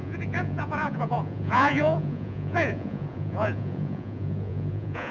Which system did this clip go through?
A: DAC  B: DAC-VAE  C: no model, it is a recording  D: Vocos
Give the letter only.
D